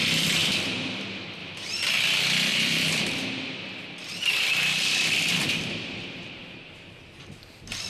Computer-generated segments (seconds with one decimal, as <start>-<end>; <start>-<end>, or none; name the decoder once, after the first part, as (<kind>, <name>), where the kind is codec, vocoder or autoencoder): 0.4-1.0 (vocoder, BigVGAN v2); 1.4-1.9; 2.5-6.9